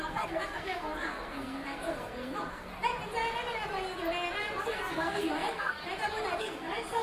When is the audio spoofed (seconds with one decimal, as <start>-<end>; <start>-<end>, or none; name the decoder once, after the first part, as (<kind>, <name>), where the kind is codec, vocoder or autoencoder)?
0.0-2.7 (codec, SNAC); 4.6-5.8; 6.4-7.0